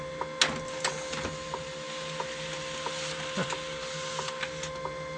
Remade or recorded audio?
recorded